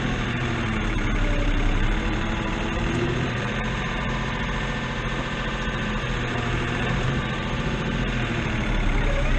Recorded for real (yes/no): no